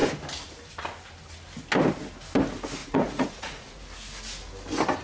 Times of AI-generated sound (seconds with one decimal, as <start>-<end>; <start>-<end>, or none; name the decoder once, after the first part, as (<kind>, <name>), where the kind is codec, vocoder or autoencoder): 2.8-3.8 (vocoder, Vocos)